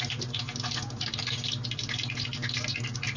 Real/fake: real